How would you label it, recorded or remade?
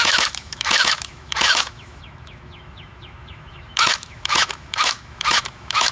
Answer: remade